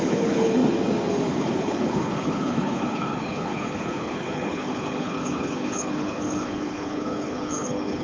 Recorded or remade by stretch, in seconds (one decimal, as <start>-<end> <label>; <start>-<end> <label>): 0.0-0.6 remade; 0.6-1.1 recorded; 1.1-8.0 remade